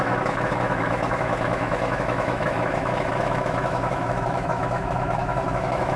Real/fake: fake